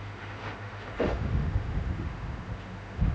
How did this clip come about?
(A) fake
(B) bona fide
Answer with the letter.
A